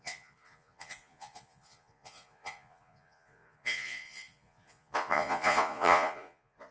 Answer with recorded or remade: remade